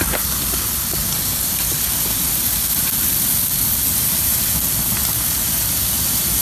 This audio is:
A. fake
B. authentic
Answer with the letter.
B